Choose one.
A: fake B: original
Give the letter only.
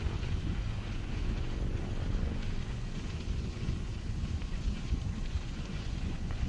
A